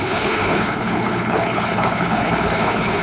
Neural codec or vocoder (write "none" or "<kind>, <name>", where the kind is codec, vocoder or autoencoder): codec, HILCodec